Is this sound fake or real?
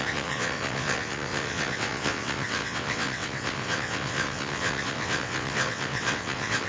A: fake